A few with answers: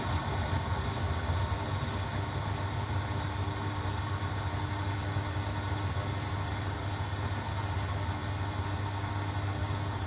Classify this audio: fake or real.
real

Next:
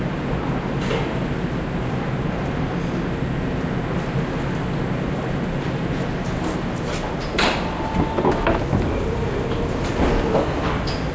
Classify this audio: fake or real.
real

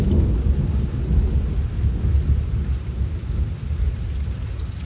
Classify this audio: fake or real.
real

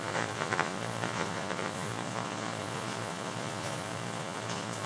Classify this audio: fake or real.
fake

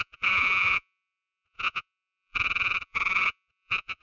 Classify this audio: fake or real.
fake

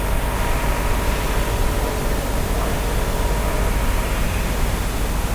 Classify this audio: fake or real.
real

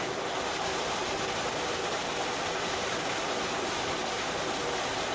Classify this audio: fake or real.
real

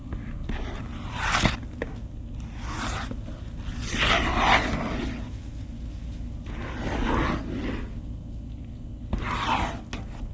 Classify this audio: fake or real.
real